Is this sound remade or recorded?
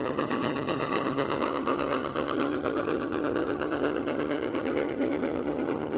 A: remade